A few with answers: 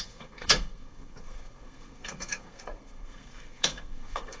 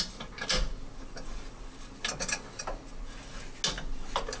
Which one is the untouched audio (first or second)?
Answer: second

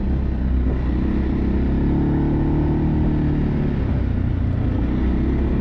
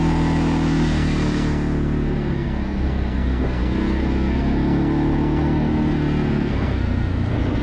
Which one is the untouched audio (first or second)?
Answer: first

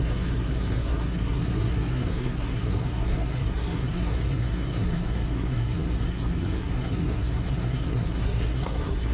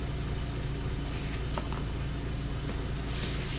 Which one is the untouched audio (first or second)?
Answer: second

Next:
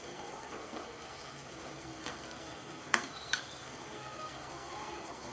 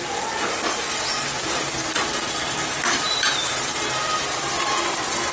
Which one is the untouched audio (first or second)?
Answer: second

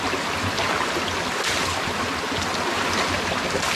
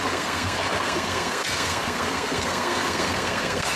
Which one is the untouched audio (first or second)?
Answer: first